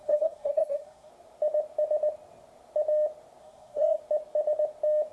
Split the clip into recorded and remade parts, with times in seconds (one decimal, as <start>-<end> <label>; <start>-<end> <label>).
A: 0.0-1.1 remade; 1.1-3.4 recorded; 3.4-4.0 remade; 4.0-5.1 recorded

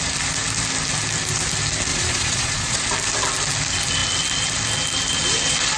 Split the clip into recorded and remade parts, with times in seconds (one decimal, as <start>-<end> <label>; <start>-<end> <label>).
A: 0.0-1.9 recorded; 1.9-2.8 remade; 2.8-5.8 recorded

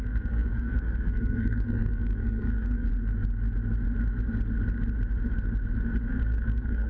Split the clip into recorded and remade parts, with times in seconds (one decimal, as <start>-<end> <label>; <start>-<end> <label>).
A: 0.0-2.9 remade; 2.9-6.1 recorded; 6.1-6.9 remade

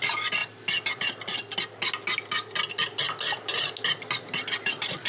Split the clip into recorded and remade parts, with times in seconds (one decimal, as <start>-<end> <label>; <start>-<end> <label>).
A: 0.0-5.1 recorded

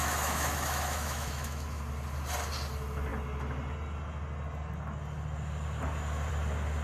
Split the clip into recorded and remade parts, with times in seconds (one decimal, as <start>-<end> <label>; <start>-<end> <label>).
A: 0.0-1.8 remade; 1.8-6.8 recorded

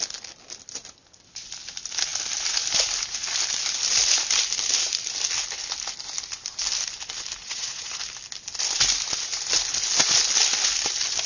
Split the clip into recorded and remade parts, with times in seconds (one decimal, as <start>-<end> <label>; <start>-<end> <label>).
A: 0.0-7.4 recorded; 7.4-8.0 remade; 8.0-11.3 recorded

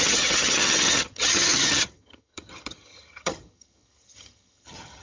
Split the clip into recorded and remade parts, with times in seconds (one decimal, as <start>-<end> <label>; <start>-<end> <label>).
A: 0.0-5.0 remade

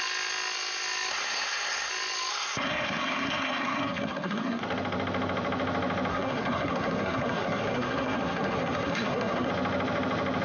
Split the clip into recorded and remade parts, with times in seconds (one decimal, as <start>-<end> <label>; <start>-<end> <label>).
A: 0.0-1.1 recorded; 1.1-1.9 remade; 1.9-2.3 recorded; 2.3-4.6 remade; 4.6-6.1 recorded; 6.1-9.5 remade; 9.5-10.4 recorded